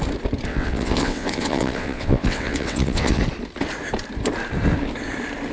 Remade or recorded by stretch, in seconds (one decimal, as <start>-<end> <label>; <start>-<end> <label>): 0.0-0.5 recorded; 0.5-3.2 remade; 3.2-5.5 recorded

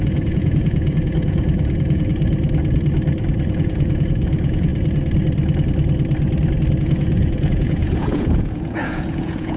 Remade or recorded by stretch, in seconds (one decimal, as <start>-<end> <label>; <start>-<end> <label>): 0.0-2.1 remade; 2.1-3.5 recorded; 3.5-4.7 remade; 4.7-6.8 recorded; 6.8-9.6 remade

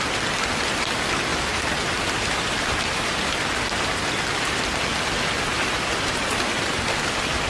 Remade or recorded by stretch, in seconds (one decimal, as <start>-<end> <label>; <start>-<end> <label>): 0.0-1.3 recorded; 1.3-3.4 remade; 3.4-5.5 recorded; 5.5-6.5 remade; 6.5-7.5 recorded